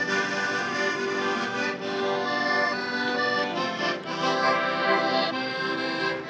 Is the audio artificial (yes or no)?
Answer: no